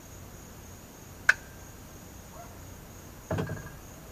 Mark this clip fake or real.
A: real